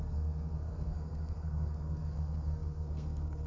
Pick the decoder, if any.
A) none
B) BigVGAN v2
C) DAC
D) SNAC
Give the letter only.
D